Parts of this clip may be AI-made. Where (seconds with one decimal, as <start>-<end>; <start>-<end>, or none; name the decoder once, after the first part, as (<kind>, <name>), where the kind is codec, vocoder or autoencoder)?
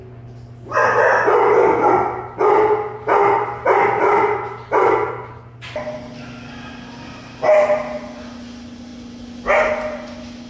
none